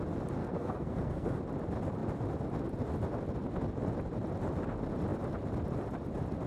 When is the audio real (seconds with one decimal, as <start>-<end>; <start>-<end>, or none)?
0.0-0.4; 1.4-6.5